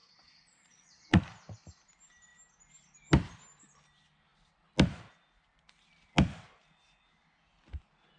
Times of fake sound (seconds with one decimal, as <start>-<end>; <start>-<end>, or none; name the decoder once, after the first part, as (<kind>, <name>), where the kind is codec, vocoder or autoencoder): 0.0-1.2 (vocoder, Vocos)